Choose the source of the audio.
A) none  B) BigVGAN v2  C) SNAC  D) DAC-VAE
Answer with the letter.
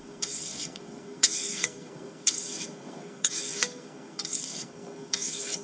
C